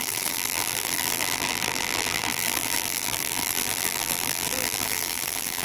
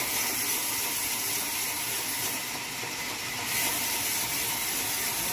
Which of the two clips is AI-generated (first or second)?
first